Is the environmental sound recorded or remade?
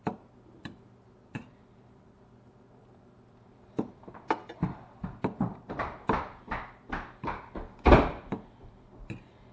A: remade